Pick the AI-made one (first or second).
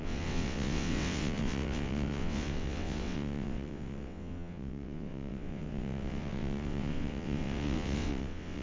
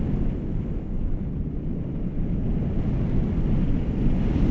first